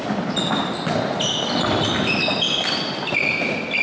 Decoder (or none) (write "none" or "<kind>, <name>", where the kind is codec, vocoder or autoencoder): none